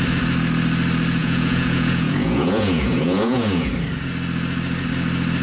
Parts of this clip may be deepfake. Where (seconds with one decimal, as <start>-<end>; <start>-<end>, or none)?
1.2-3.7